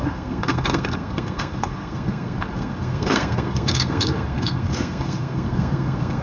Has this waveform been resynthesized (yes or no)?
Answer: yes